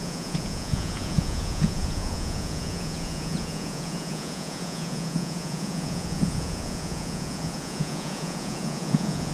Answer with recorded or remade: remade